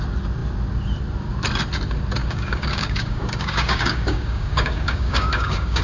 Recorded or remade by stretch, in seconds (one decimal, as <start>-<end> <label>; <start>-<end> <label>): 0.0-2.2 recorded; 2.2-5.8 remade